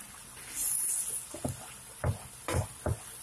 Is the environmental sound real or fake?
real